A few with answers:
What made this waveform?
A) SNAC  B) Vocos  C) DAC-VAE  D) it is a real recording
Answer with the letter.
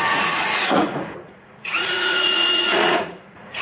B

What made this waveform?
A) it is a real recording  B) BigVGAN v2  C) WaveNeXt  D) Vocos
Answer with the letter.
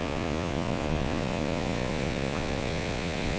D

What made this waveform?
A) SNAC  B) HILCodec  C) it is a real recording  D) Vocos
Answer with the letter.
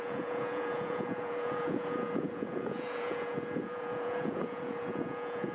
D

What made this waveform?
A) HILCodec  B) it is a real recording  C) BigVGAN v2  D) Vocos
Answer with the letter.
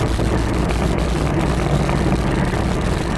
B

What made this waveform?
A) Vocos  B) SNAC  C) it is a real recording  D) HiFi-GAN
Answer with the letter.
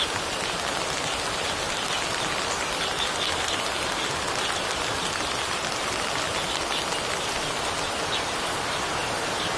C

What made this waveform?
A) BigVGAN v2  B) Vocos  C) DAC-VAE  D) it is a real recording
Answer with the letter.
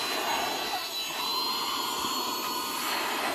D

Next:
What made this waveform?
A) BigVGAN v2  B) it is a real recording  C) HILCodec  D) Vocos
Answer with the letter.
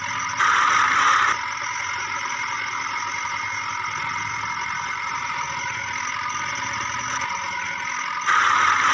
B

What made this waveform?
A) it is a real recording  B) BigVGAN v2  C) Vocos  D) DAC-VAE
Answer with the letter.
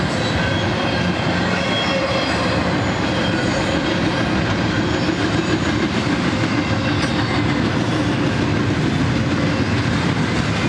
A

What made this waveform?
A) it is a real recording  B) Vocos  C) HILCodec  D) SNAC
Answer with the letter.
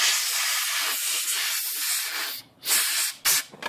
A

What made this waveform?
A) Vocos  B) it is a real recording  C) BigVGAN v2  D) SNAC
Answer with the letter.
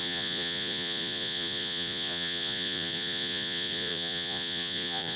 A